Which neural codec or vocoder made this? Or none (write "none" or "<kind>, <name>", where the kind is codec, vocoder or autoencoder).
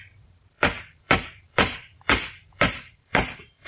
vocoder, BigVGAN v2